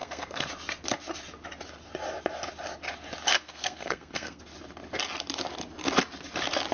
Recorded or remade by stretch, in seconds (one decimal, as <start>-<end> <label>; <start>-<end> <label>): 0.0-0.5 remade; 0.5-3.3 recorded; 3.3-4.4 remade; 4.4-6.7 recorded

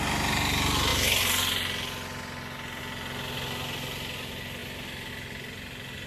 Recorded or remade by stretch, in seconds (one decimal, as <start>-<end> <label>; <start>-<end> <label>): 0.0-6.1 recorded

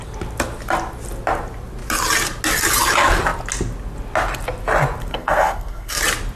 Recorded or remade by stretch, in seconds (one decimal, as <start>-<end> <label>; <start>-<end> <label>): 0.0-5.1 recorded; 5.1-6.0 remade; 6.0-6.4 recorded